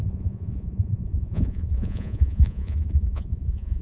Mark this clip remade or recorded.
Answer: remade